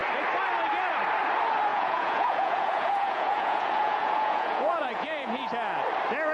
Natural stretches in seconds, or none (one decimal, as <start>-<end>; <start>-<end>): 0.0-1.7; 5.5-6.3